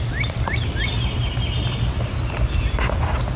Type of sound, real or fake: real